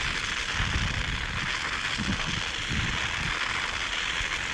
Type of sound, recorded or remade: recorded